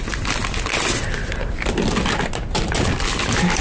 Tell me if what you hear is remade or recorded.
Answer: recorded